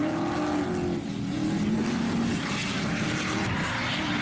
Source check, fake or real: real